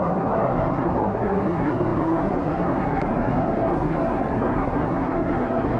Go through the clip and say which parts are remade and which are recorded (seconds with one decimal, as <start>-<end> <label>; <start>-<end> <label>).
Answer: 0.0-5.8 remade